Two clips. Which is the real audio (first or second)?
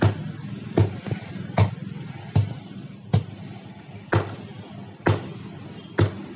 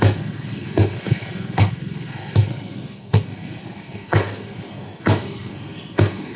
first